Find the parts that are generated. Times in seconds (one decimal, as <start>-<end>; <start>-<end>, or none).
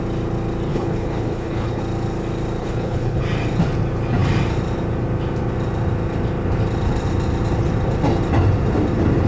0.7-1.8; 2.6-3.2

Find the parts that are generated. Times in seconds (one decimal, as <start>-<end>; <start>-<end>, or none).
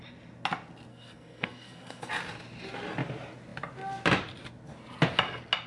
0.9-2.1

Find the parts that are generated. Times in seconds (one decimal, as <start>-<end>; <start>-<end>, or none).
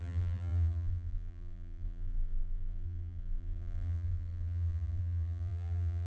0.0-6.1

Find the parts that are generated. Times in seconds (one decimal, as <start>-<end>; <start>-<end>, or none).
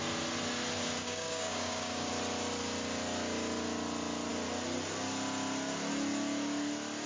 1.0-2.1